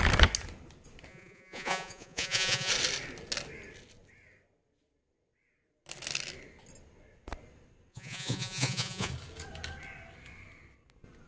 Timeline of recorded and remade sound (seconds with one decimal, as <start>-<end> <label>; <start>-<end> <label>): 0.0-1.1 recorded; 1.1-2.7 remade; 2.7-7.9 recorded; 7.9-9.1 remade; 9.1-11.3 recorded